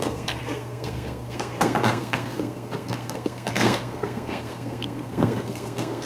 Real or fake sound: fake